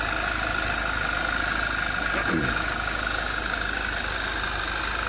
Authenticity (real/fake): real